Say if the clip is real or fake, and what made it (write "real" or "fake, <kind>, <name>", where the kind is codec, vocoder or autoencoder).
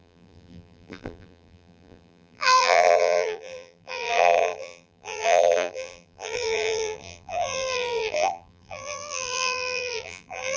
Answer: fake, vocoder, BigVGAN v2